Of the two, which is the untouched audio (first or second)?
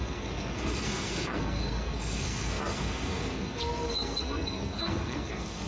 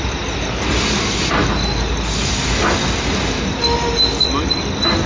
second